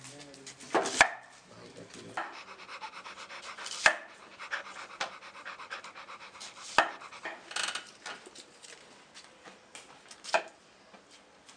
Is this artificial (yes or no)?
no